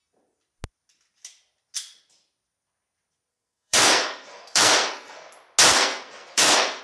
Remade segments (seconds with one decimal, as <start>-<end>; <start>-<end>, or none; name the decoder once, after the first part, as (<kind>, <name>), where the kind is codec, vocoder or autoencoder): 3.3-5.3 (codec, SNAC); 5.7-6.8